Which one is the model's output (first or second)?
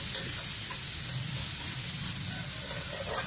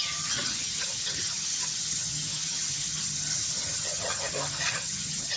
second